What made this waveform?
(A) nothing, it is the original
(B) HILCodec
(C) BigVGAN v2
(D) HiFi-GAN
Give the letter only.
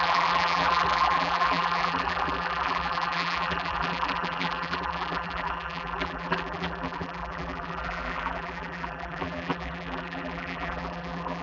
C